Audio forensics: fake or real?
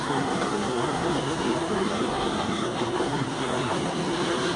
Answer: fake